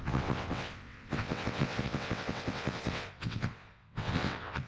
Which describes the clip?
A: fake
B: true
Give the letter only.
A